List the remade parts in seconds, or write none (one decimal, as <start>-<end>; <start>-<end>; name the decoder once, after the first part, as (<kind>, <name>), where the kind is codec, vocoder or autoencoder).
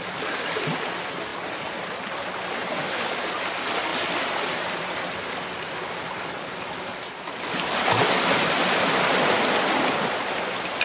none